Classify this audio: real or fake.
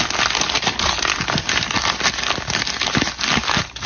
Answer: real